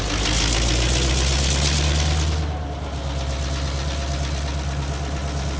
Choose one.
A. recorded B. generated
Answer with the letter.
A